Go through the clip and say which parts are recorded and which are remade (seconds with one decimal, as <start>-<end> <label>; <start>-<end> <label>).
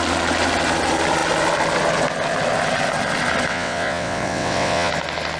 0.0-3.5 recorded; 3.5-4.9 remade; 4.9-5.4 recorded